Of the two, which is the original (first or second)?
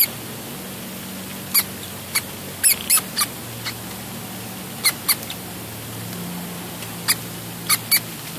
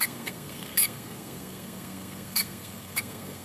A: first